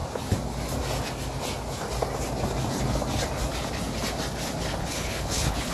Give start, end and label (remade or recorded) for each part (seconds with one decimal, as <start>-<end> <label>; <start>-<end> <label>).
0.0-4.8 recorded; 4.8-5.7 remade